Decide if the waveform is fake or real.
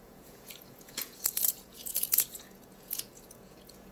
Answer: fake